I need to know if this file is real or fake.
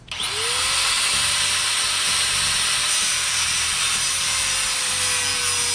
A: real